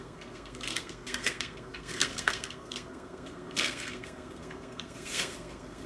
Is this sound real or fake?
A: fake